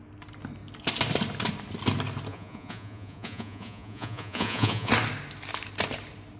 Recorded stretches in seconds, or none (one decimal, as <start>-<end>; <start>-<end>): 0.0-2.3; 4.9-6.4